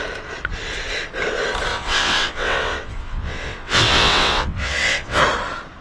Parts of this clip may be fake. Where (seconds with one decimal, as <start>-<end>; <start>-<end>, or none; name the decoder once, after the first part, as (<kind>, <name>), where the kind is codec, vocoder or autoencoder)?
1.7-5.2 (vocoder, WaveNeXt)